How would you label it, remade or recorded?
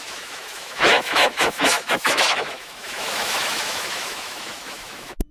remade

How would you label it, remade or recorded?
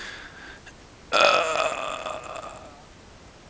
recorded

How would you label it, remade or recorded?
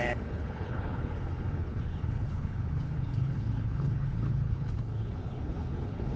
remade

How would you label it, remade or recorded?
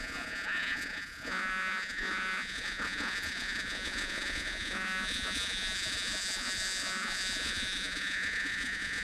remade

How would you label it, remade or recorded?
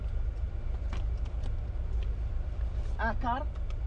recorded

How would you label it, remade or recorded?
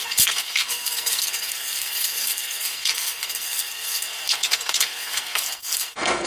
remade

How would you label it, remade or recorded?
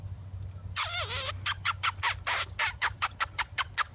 recorded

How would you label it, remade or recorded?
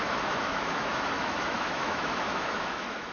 remade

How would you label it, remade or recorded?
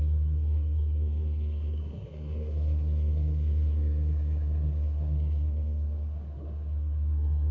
remade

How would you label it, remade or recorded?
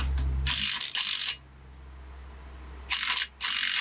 recorded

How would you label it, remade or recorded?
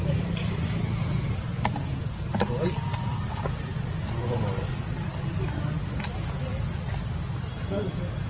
recorded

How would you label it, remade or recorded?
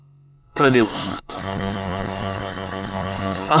remade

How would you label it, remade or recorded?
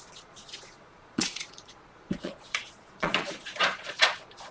remade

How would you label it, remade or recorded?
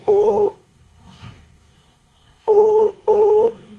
remade